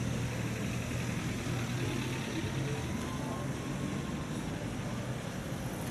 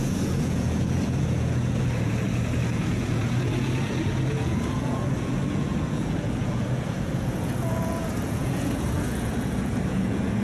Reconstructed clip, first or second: second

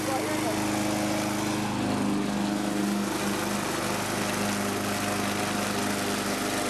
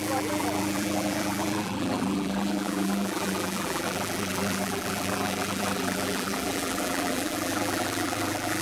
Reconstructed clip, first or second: second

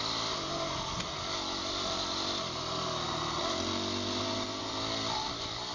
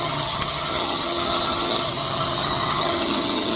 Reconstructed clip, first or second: second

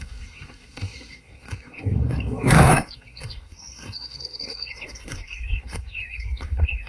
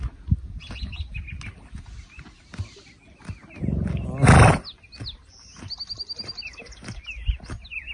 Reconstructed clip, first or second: first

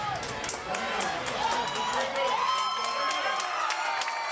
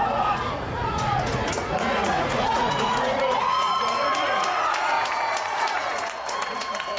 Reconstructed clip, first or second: second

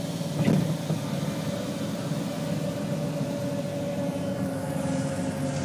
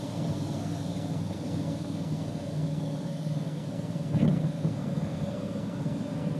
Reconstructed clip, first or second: second